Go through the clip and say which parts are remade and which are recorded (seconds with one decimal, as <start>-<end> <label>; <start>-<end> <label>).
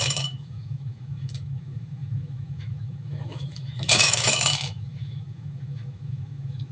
0.0-6.7 remade